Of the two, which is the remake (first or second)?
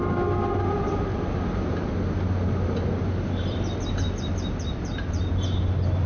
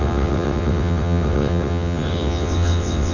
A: second